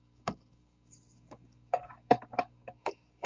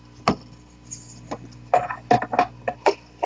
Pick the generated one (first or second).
first